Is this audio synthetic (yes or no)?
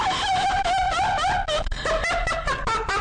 no